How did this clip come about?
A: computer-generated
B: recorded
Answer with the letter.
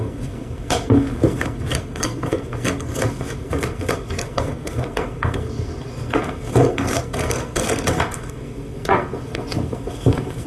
A